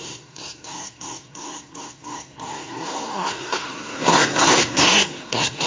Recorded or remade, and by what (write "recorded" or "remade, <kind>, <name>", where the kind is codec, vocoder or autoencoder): remade, codec, SNAC